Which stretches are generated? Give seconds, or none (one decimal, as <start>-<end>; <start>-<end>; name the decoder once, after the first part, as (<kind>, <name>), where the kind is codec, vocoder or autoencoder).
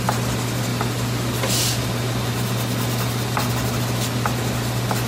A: none